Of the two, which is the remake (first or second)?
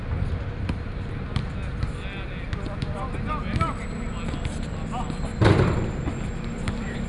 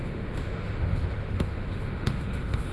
second